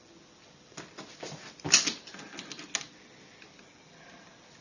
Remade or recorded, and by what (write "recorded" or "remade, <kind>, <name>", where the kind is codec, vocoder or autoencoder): recorded